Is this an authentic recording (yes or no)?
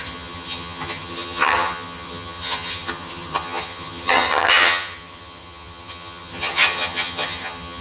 no